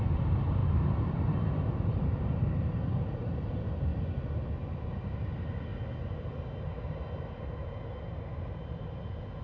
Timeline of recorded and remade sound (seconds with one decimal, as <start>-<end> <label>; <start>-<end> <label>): 0.0-3.9 remade; 3.9-4.9 recorded; 4.9-5.7 remade; 5.7-8.0 recorded; 8.0-9.4 remade